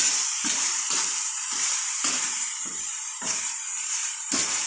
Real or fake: fake